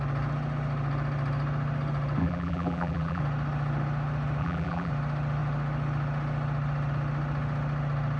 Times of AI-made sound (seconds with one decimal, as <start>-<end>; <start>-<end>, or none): 2.2-3.2; 4.4-4.9